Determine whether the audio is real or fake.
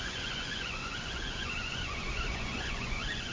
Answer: fake